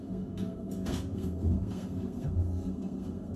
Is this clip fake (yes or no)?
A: yes